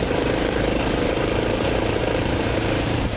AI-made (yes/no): yes